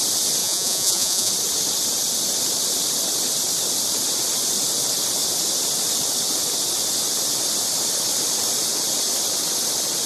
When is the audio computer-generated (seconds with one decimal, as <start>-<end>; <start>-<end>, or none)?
0.4-1.3